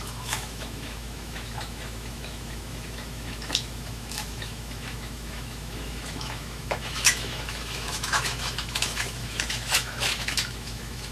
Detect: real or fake fake